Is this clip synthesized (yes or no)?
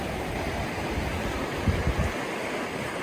no